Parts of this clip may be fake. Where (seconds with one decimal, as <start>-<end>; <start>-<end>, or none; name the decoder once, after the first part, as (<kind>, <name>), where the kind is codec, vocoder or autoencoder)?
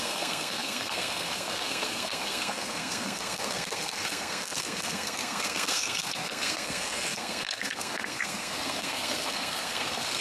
0.0-10.2 (codec, SNAC)